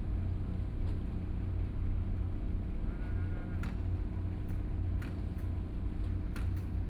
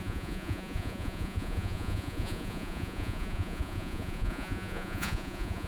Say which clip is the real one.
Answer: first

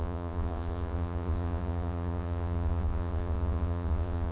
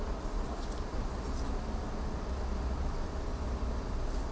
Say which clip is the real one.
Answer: second